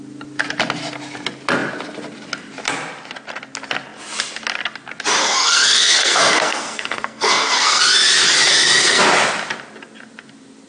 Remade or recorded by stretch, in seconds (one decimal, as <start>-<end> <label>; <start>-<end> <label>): 0.0-5.2 recorded; 5.2-7.8 remade; 7.8-8.5 recorded; 8.5-9.0 remade; 9.0-10.7 recorded